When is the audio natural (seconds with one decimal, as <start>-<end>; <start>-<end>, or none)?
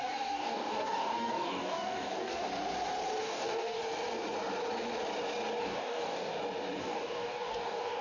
2.5-3.2; 3.8-5.6; 6.3-6.8